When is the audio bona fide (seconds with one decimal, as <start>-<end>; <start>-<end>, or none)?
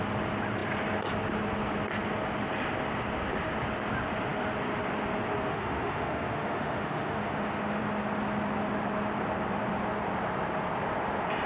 0.0-5.5; 7.8-11.5